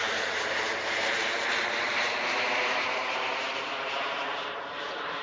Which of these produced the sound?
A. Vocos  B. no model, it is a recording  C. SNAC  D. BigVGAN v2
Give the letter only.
D